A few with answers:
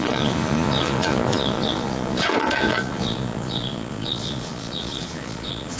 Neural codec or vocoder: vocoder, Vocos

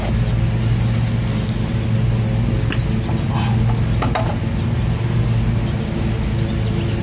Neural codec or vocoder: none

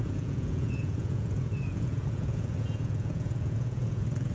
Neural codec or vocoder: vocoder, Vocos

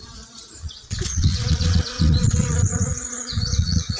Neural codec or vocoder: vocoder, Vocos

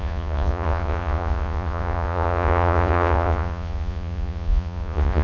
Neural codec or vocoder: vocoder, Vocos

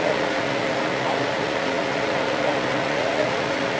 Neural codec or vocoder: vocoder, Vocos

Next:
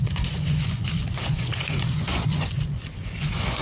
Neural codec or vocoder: vocoder, Vocos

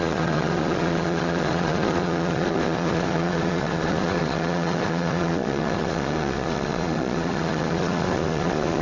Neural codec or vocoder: vocoder, Vocos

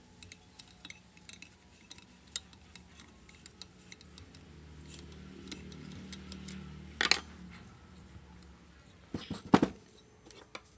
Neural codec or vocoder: none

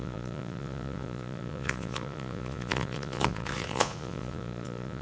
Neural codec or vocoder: vocoder, Vocos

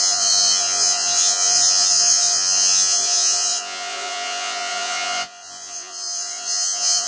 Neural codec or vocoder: vocoder, Vocos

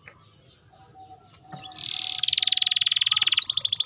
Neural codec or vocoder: none